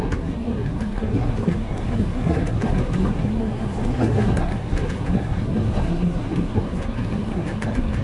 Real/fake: fake